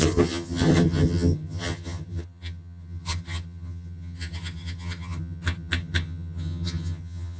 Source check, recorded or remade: remade